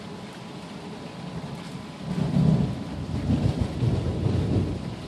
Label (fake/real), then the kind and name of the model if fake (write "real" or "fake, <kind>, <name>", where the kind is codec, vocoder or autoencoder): real